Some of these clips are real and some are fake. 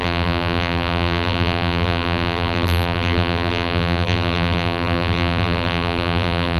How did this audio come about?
fake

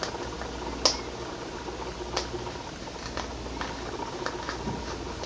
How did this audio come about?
real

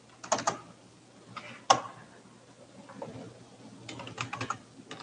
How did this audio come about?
real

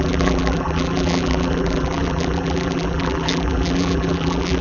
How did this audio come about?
fake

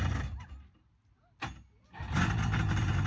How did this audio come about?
real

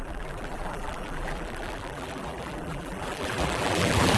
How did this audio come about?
fake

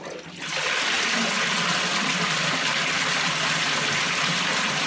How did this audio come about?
real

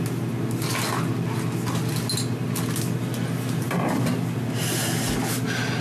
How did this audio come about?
real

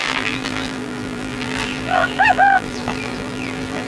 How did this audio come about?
fake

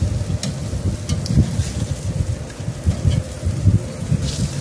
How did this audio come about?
real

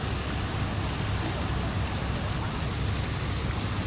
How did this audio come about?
real